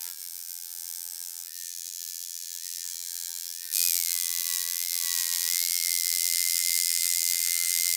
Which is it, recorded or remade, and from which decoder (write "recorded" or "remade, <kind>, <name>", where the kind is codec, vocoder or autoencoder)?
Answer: remade, vocoder, BigVGAN v2